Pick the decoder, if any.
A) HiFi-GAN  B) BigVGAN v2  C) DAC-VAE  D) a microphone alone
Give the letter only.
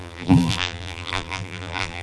B